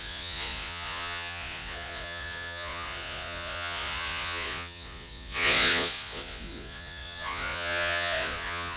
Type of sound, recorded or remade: remade